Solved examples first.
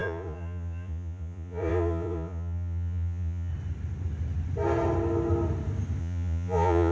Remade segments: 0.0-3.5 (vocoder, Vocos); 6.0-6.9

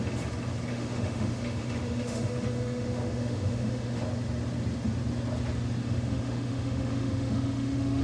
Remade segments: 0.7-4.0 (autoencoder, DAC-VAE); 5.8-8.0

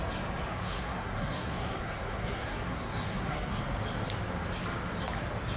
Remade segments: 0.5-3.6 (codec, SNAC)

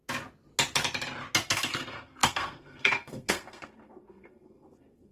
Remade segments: 1.5-5.1 (codec, SNAC)

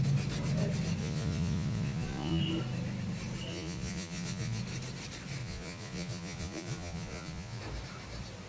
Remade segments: 1.0-2.4 (vocoder, Vocos); 3.5-4.6; 5.4-7.6